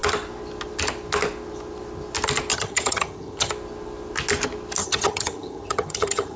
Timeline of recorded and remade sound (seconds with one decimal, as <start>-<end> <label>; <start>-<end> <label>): 0.0-2.5 recorded; 2.5-3.5 remade; 3.5-4.8 recorded; 4.8-6.4 remade